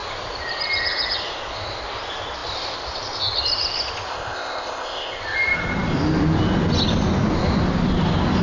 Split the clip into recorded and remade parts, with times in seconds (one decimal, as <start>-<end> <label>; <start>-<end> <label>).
0.0-4.1 recorded; 4.1-5.2 remade; 5.2-8.4 recorded